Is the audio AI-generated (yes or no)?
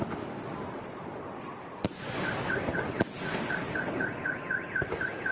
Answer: no